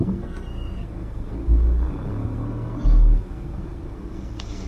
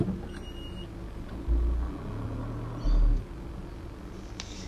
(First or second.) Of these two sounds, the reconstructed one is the first